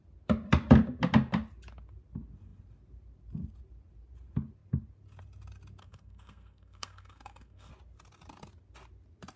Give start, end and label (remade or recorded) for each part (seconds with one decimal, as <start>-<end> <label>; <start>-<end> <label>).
0.0-5.8 recorded; 5.8-7.7 remade; 7.7-9.4 recorded